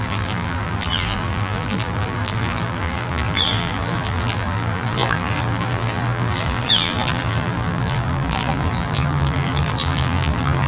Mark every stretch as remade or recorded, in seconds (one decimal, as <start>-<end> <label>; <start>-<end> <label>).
0.0-10.7 remade